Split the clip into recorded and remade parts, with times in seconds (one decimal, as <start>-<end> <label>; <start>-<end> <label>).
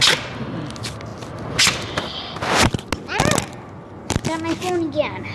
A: 0.0-5.3 recorded